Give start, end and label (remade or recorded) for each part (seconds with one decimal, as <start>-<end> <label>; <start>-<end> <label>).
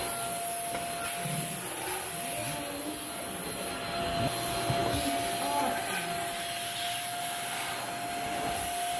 0.0-9.0 recorded